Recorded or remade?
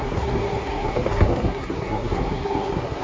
remade